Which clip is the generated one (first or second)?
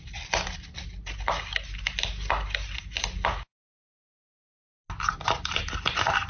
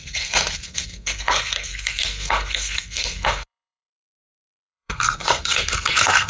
second